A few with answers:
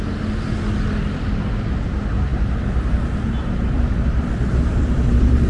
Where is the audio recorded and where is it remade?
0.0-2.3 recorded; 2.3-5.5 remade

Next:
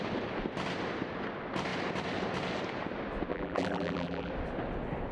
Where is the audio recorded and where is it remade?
0.0-3.3 recorded; 3.3-4.3 remade; 4.3-5.1 recorded

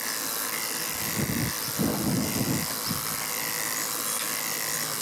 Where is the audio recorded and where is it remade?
0.0-1.9 remade; 1.9-5.0 recorded

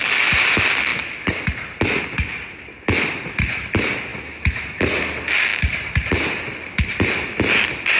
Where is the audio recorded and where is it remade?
0.0-8.0 recorded

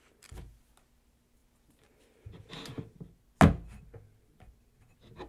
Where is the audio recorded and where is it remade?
0.0-5.3 recorded

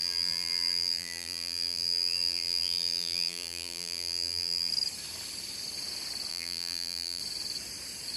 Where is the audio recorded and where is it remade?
0.0-4.7 remade; 4.7-6.3 recorded; 6.3-7.2 remade; 7.2-8.2 recorded

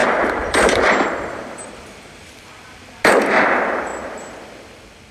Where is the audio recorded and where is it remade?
0.0-2.3 remade; 2.3-5.1 recorded